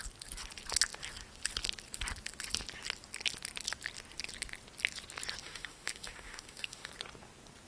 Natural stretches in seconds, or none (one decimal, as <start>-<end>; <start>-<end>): 0.0-5.4; 6.9-7.7